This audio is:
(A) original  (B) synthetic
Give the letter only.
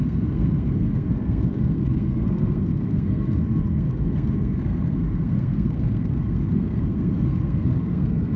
B